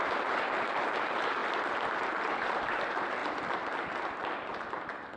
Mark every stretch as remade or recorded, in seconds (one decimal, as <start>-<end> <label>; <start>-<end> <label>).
0.0-5.2 remade